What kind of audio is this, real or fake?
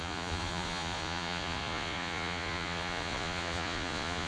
fake